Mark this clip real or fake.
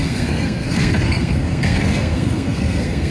fake